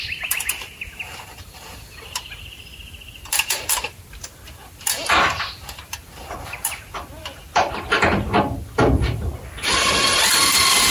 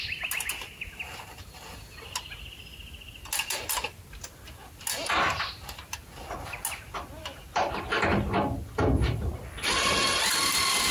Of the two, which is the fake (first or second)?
first